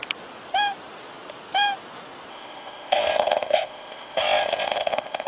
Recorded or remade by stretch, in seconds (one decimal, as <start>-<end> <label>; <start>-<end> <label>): 0.0-2.3 recorded; 2.3-5.3 remade